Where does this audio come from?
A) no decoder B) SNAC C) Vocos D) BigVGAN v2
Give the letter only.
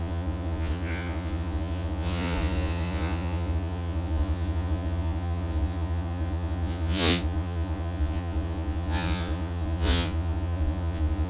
C